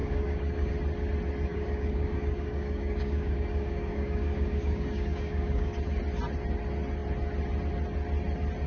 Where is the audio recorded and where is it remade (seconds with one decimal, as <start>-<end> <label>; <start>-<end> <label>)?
0.0-0.7 remade; 0.7-1.5 recorded; 1.5-5.8 remade; 5.8-8.7 recorded